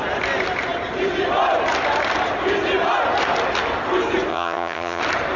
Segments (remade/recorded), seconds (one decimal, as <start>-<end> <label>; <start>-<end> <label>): 0.0-4.3 recorded; 4.3-5.0 remade; 5.0-5.4 recorded